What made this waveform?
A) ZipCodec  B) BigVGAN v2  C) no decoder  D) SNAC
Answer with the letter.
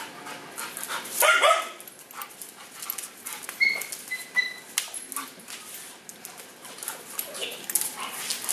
C